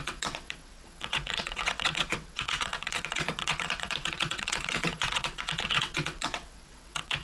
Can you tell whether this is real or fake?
fake